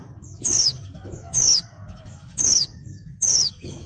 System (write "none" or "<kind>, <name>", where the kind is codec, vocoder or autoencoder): codec, DAC